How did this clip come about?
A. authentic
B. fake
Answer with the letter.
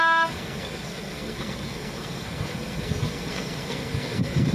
B